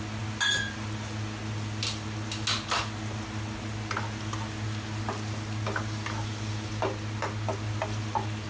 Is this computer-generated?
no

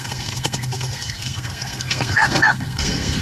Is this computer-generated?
yes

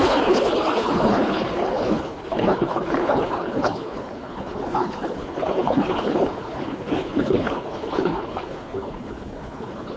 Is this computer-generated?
yes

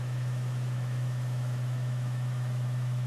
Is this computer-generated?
yes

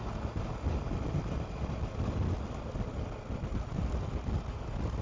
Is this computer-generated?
no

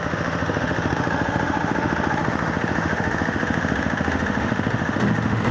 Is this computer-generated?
yes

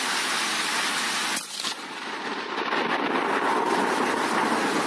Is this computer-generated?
no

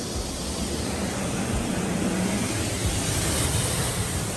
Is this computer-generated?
no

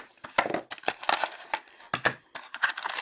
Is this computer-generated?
no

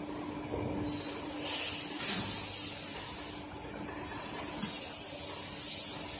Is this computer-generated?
no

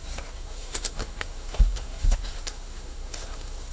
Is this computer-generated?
yes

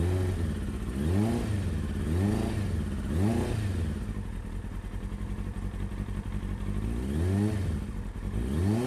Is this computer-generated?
no